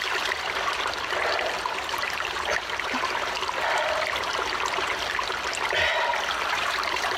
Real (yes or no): yes